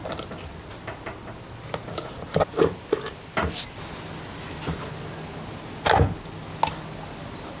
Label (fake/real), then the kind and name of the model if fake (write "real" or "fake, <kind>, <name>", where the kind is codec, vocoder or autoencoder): real